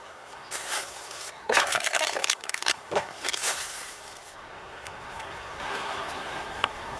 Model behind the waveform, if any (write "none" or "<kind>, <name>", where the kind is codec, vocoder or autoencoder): codec, SNAC